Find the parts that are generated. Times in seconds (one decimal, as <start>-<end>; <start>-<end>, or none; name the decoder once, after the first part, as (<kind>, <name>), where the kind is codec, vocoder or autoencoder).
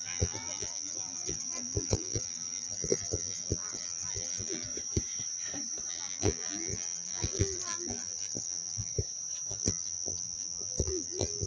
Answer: 0.0-4.7 (vocoder, BigVGAN v2); 5.9-8.9; 9.5-11.5